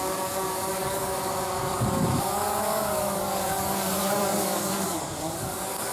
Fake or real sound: fake